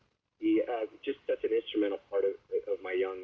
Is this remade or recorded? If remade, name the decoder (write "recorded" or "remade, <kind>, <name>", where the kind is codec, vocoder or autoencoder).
recorded